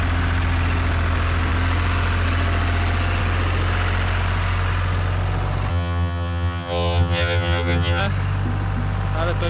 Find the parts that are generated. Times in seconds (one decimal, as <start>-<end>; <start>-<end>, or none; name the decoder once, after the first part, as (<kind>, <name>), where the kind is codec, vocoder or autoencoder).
5.7-8.0 (vocoder, HiFi-GAN)